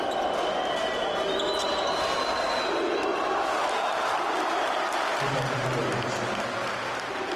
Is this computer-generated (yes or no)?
no